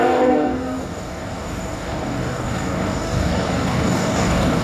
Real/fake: fake